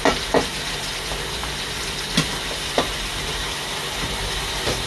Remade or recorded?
recorded